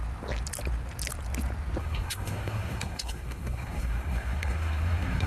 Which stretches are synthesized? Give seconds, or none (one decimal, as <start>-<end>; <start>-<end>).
1.8-5.3